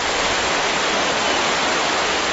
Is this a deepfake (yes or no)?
no